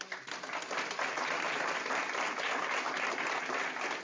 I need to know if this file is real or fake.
real